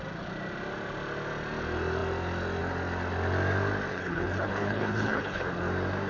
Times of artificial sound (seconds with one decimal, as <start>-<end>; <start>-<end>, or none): 3.9-5.4